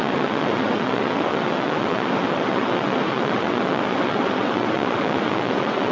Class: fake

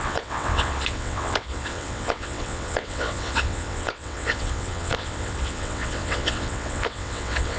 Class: fake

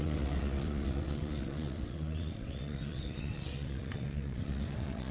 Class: fake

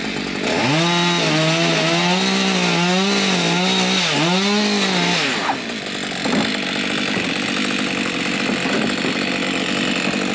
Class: real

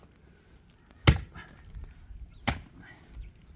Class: real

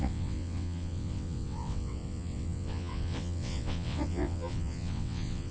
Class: fake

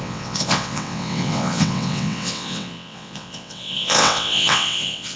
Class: fake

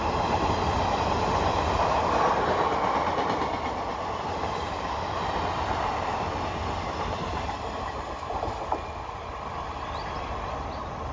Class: real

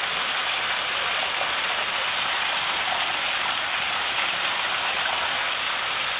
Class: real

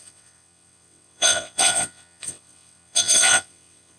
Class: fake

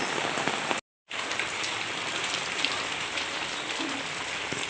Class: real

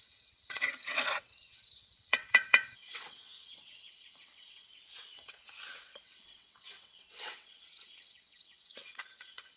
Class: fake